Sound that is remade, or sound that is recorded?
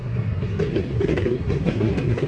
remade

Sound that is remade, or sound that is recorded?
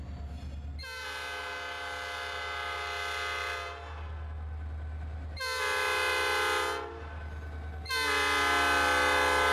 recorded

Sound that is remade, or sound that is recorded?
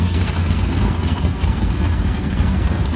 remade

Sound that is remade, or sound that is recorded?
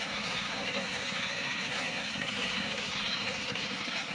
remade